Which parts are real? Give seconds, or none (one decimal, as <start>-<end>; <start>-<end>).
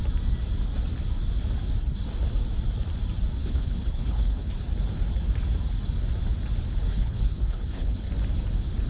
0.0-3.4; 4.5-6.9; 8.1-8.9